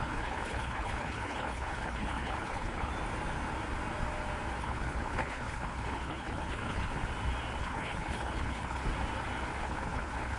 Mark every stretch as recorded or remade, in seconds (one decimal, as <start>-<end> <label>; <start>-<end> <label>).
0.0-2.9 remade; 2.9-4.6 recorded; 4.6-6.9 remade; 6.9-7.6 recorded; 7.6-8.8 remade; 8.8-9.6 recorded; 9.6-10.4 remade